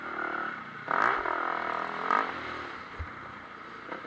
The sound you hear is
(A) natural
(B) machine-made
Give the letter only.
A